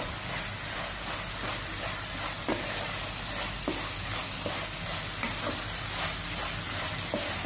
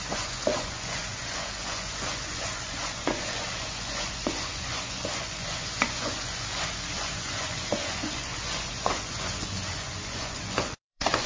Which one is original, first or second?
first